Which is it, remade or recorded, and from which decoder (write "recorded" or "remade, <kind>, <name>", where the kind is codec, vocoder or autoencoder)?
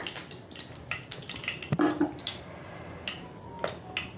recorded